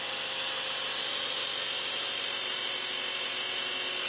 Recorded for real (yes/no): yes